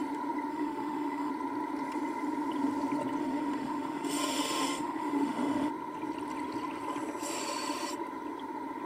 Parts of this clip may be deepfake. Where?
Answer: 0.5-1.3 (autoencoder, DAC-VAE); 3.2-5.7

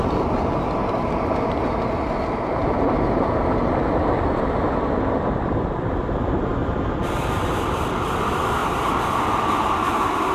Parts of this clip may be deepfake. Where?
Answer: none

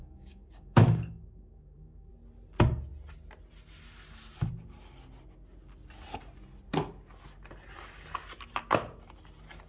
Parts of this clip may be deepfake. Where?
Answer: 0.0-2.1 (codec, DAC)

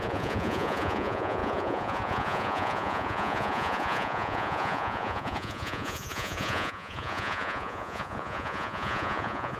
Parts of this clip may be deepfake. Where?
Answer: 0.0-9.6 (vocoder, Vocos)

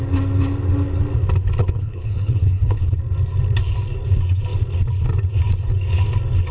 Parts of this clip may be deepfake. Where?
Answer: 1.6-3.0 (codec, HILCodec)

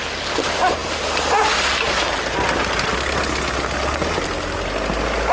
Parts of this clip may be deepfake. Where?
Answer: none

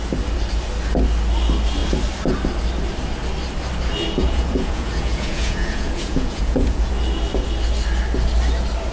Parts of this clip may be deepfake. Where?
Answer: 4.2-6.9 (vocoder, Vocos)

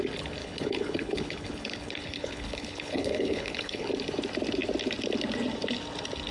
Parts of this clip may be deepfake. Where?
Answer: 0.4-3.9 (codec, HILCodec)